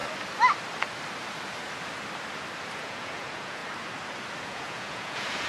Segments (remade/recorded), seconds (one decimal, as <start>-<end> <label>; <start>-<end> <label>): 0.0-2.8 recorded; 2.8-3.6 remade; 3.6-4.4 recorded; 4.4-5.5 remade